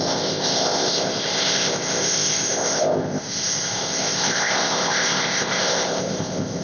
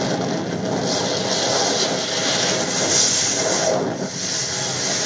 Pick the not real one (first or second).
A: first